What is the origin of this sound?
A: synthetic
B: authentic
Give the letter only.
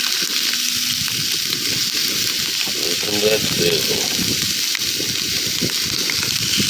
B